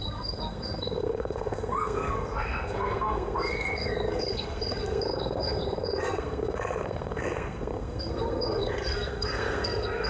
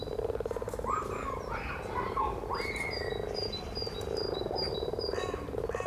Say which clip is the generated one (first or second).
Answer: first